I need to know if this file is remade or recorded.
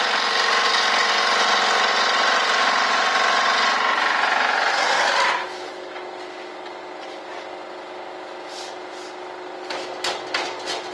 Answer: recorded